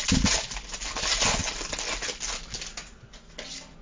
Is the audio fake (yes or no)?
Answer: no